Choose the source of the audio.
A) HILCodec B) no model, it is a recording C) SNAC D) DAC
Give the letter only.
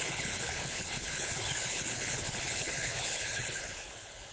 A